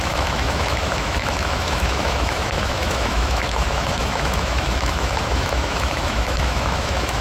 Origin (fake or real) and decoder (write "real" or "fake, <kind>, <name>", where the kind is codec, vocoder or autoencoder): fake, autoencoder, DAC-VAE